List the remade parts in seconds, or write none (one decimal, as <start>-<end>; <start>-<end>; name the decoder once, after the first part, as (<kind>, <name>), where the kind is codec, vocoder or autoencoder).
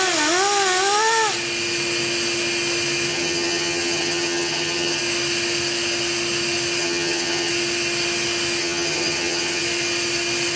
3.1-5.0 (vocoder, HiFi-GAN); 6.8-7.5; 8.6-9.6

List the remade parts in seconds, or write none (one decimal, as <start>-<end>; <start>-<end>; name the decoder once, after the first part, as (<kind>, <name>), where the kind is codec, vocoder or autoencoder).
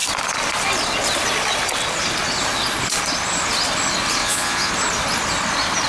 4.2-4.7 (vocoder, Vocos)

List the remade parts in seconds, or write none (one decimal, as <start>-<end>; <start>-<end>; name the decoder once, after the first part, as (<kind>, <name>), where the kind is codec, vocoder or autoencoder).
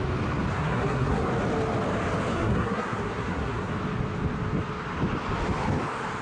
0.5-1.3 (codec, SNAC); 2.3-3.7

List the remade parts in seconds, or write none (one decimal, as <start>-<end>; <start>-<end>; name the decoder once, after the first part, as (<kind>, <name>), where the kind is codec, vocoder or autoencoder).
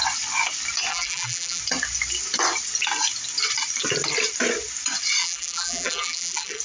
0.9-1.6 (vocoder, BigVGAN v2); 5.2-6.6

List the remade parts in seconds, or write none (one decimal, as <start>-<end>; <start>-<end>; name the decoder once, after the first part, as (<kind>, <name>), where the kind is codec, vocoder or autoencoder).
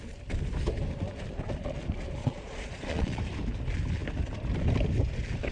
2.2-3.2 (vocoder, Vocos)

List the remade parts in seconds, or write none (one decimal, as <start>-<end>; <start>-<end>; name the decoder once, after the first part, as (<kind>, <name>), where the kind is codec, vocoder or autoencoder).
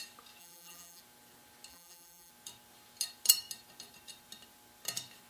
0.4-1.0 (vocoder, BigVGAN v2); 1.7-2.3